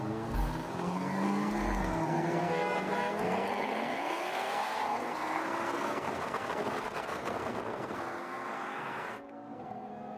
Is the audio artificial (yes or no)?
yes